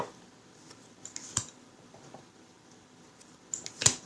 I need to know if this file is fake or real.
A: real